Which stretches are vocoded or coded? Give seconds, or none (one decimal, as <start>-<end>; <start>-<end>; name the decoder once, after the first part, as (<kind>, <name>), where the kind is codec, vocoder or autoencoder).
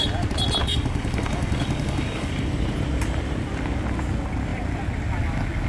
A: 0.6-2.5 (codec, DAC)